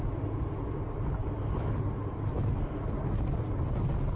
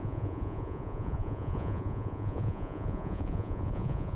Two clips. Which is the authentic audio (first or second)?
first